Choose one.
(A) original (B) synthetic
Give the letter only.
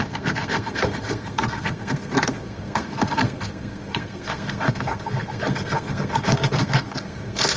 B